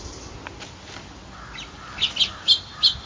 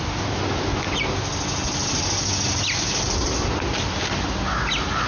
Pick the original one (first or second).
second